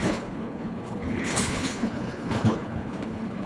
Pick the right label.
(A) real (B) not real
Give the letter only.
B